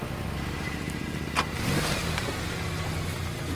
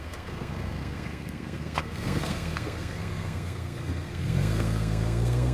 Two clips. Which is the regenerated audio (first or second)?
second